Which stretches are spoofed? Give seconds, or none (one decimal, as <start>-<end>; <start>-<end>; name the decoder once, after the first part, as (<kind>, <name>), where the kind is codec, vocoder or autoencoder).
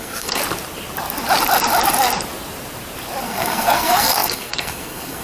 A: 0.0-0.4 (codec, SNAC); 3.2-5.2